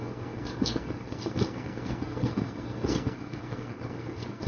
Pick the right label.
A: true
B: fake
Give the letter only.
B